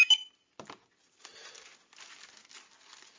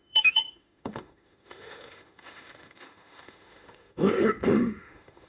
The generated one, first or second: second